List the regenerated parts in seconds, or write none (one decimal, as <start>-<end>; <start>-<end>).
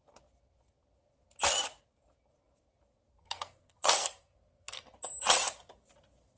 3.1-4.8